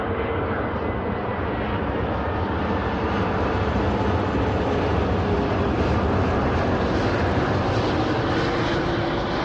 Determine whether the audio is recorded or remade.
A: recorded